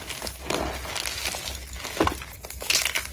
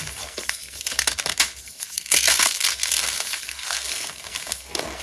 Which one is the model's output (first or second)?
second